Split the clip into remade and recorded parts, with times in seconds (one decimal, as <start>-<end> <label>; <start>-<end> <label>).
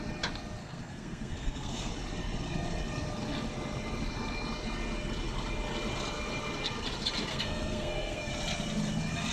0.0-0.6 recorded; 0.6-1.9 remade; 1.9-7.3 recorded; 7.3-8.3 remade; 8.3-9.3 recorded